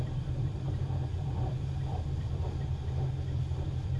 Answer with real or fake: fake